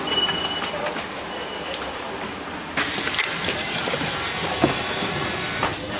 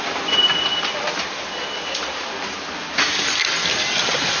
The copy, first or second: first